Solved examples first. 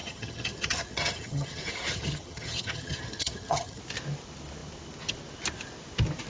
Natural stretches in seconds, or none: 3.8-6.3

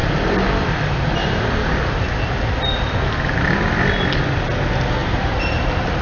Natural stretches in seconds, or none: 0.0-5.0

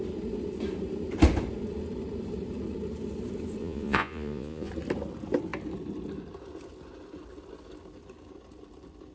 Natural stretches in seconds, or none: 0.0-3.6; 4.7-9.1

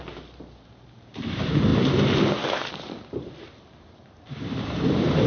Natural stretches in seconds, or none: none

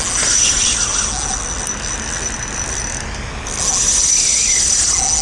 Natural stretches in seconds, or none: 0.0-5.2